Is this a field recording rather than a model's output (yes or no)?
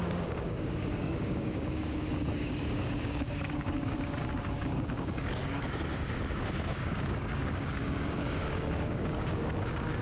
no